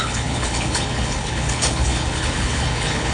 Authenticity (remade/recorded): remade